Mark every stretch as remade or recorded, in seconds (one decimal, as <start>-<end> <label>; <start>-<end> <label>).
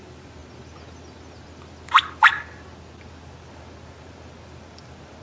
0.0-5.2 recorded